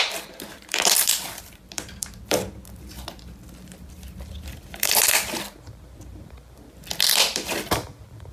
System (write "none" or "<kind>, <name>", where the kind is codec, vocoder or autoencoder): vocoder, BigVGAN v2